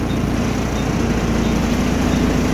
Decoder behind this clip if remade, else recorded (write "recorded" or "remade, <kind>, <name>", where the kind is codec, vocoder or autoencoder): recorded